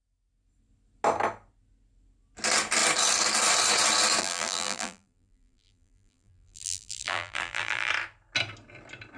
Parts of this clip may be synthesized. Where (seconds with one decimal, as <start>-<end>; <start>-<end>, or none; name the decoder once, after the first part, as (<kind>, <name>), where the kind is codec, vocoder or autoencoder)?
4.2-7.9 (vocoder, BigVGAN v2)